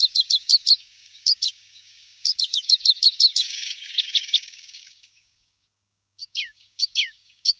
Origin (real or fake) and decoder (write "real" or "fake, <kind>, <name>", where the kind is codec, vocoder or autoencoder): fake, codec, DAC